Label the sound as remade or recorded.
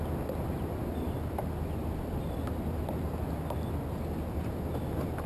recorded